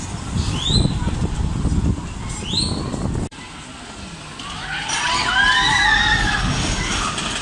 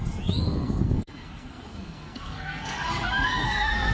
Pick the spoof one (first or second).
second